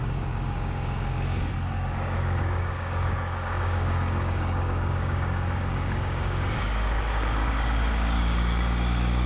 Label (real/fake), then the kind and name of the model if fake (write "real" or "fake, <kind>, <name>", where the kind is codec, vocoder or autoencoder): fake, codec, DAC